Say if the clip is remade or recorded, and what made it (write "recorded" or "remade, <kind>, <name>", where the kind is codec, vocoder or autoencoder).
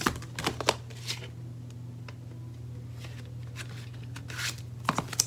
recorded